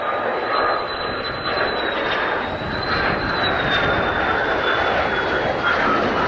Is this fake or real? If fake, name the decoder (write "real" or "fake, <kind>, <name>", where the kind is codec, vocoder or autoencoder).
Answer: real